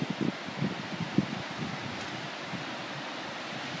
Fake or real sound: real